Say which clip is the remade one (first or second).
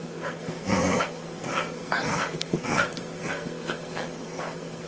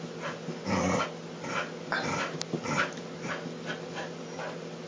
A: first